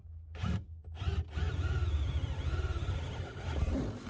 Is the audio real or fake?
real